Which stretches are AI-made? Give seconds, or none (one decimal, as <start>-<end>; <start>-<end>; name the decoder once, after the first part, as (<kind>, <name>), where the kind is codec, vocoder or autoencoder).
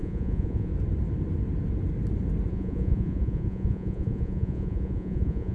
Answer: 0.0-0.7 (vocoder, Vocos); 2.5-5.5